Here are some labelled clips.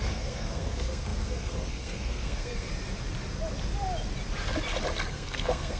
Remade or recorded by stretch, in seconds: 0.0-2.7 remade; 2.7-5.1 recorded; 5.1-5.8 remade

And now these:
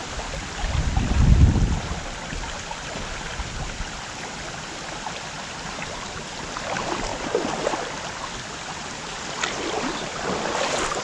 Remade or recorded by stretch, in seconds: 0.0-7.1 remade; 7.1-9.9 recorded; 9.9-11.0 remade